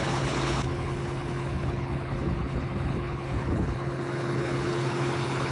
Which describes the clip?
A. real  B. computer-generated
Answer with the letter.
B